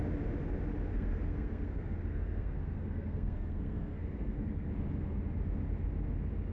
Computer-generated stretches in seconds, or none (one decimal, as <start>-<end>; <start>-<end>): 0.9-4.7